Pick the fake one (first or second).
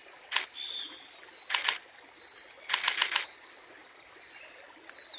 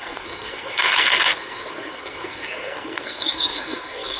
second